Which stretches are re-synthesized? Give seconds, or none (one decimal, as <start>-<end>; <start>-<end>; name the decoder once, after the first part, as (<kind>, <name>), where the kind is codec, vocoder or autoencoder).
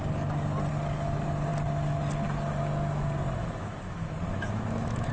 3.4-5.1 (autoencoder, DAC-VAE)